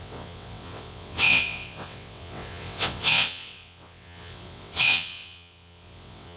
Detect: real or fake fake